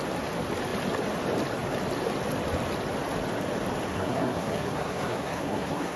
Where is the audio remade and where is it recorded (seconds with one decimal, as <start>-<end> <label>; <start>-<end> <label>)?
0.0-3.9 recorded; 3.9-6.0 remade